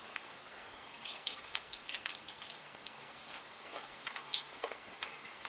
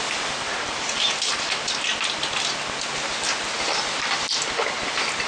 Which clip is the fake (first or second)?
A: first